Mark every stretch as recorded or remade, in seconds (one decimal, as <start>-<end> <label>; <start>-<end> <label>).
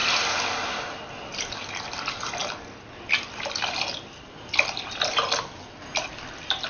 0.0-6.7 recorded